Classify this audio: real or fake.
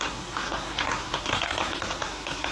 fake